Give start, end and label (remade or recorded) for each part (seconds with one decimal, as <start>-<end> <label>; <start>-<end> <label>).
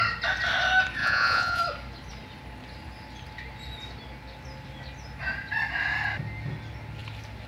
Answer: 0.0-1.0 recorded; 1.0-1.6 remade; 1.6-7.5 recorded